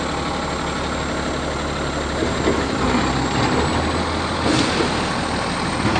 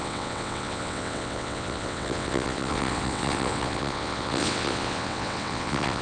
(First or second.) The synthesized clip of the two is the second